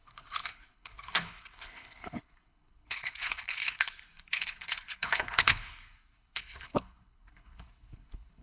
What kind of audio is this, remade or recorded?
remade